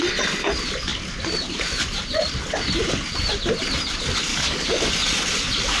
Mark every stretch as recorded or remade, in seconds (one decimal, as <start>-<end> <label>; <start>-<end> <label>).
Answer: 0.0-4.3 recorded; 4.3-4.9 remade; 4.9-5.8 recorded